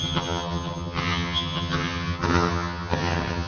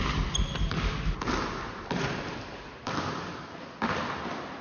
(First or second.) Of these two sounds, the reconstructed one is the first